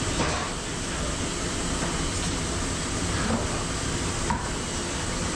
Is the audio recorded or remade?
recorded